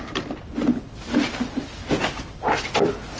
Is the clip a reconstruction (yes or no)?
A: no